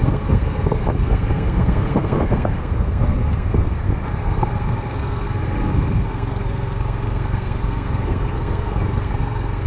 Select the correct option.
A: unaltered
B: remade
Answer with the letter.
B